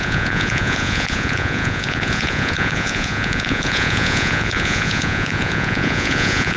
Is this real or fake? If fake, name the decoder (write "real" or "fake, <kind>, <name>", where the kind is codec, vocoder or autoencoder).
fake, vocoder, Vocos